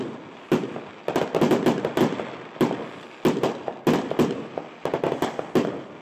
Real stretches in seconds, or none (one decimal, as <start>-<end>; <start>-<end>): 0.0-6.0